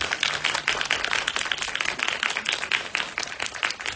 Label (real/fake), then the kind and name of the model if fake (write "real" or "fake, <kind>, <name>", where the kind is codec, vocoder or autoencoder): real